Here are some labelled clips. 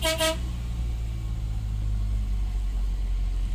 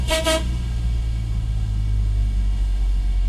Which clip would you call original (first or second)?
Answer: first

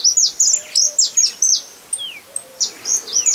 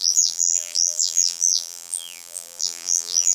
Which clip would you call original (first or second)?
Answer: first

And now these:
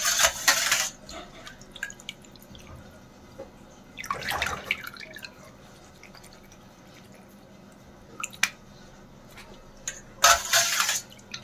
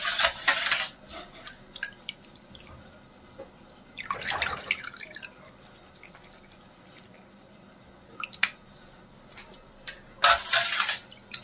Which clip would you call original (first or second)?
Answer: first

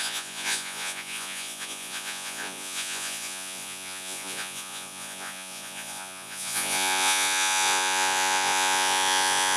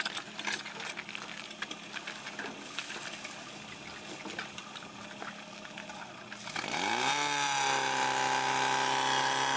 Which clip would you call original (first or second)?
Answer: second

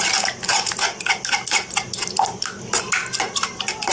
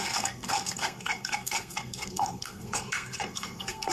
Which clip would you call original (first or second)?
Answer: first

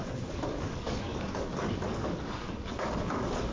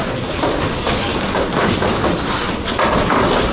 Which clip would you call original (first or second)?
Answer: second